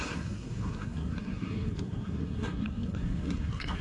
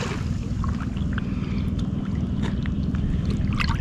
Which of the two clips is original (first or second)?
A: second